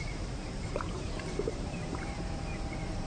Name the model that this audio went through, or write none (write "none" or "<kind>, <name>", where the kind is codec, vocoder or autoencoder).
vocoder, BigVGAN v2